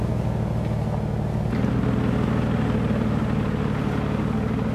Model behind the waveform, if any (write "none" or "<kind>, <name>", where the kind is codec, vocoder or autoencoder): none